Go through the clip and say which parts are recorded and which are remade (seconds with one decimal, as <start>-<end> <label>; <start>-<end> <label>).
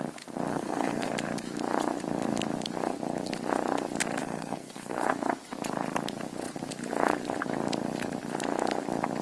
0.0-0.5 recorded; 0.5-1.1 remade; 1.1-4.2 recorded; 4.2-5.1 remade; 5.1-9.2 recorded